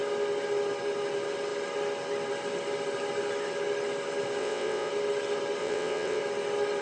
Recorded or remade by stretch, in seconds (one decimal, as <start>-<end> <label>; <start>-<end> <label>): 0.0-4.4 recorded; 4.4-4.9 remade; 4.9-5.6 recorded; 5.6-6.2 remade; 6.2-6.8 recorded